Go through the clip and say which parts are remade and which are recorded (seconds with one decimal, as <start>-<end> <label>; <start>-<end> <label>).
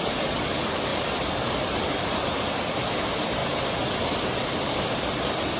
0.0-5.6 recorded